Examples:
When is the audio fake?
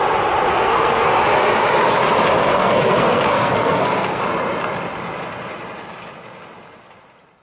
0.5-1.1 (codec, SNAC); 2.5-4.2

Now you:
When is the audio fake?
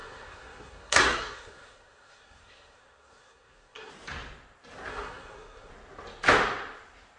0.0-3.9 (codec, SNAC); 4.9-5.7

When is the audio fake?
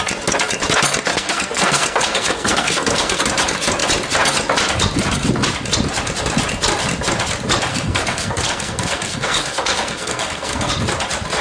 1.1-3.2 (codec, SNAC); 7.7-10.7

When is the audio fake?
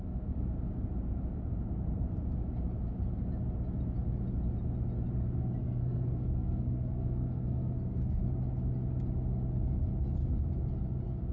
5.6-8.2 (codec, SNAC)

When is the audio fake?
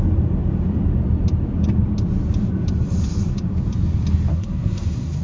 4.3-5.2 (codec, SNAC)